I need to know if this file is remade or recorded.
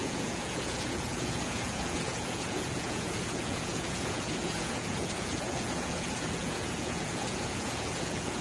remade